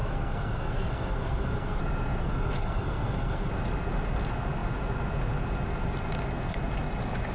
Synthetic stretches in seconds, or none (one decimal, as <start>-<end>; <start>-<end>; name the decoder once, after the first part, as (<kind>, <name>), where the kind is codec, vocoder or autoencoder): 0.0-1.8 (codec, SNAC); 2.2-3.5